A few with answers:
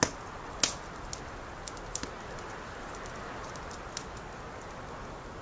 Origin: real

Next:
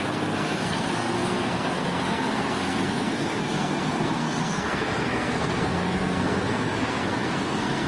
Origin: fake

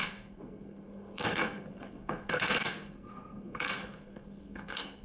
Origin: fake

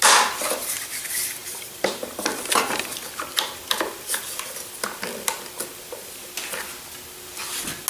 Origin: real